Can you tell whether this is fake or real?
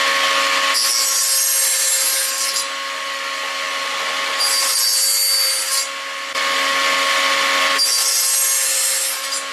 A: real